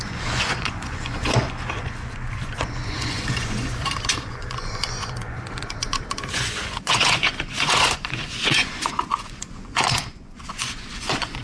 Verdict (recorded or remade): remade